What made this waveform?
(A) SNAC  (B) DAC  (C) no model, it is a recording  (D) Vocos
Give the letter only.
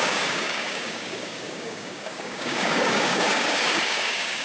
B